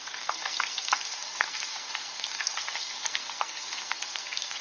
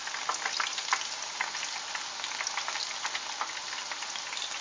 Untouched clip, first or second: second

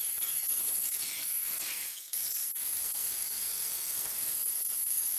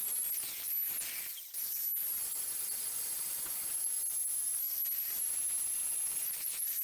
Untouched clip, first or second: second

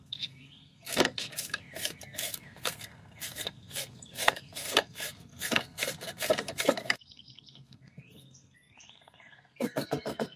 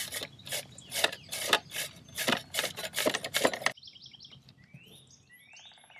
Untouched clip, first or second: second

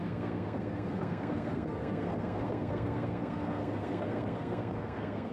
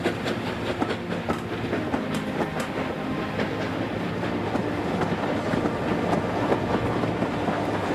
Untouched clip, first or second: second